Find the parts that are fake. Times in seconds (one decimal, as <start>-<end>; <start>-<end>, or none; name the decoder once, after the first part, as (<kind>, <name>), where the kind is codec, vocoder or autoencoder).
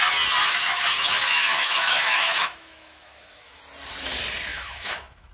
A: 0.4-3.6 (autoencoder, DAC-VAE); 4.5-5.3